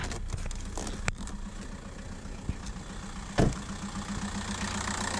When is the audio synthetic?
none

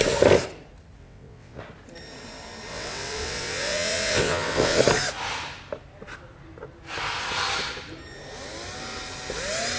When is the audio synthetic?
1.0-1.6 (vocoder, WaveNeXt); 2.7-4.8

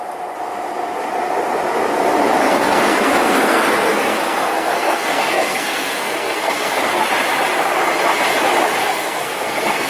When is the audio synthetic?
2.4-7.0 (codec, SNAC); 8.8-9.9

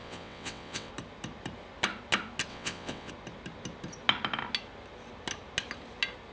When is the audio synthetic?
0.0-0.9 (vocoder, WaveNeXt); 2.5-3.1

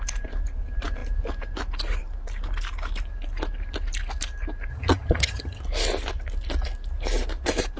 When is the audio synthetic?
4.7-5.6 (vocoder, HiFi-GAN)

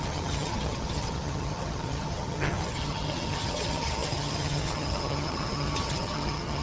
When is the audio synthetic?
0.0-6.6 (vocoder, HiFi-GAN)

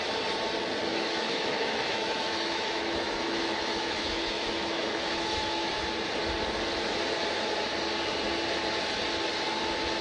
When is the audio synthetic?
0.9-5.7 (autoencoder, DAC-VAE)